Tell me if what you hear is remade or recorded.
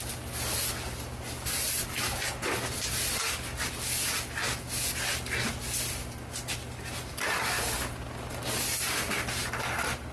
recorded